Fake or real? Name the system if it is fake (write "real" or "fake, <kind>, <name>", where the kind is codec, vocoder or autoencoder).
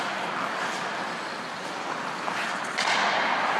real